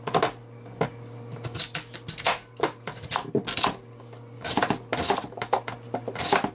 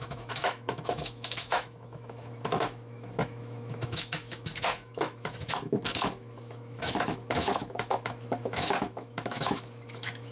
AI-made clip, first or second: second